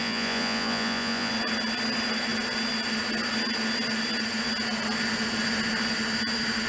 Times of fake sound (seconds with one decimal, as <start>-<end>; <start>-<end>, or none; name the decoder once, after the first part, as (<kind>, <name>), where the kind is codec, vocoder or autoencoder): 0.0-1.3 (vocoder, Vocos)